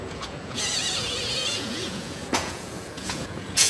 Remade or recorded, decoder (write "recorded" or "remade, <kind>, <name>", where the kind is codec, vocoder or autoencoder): remade, vocoder, Vocos